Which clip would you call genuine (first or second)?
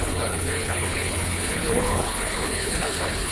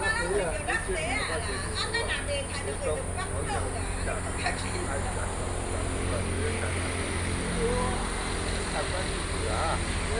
second